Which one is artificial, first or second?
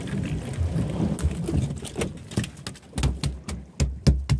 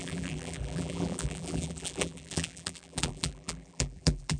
second